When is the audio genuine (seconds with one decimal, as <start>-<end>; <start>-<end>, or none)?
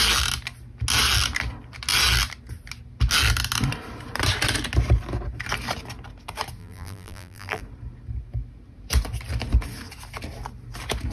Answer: 0.0-6.6; 7.6-11.1